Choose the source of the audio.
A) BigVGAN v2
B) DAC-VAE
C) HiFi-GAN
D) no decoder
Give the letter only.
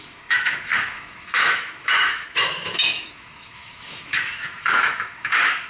B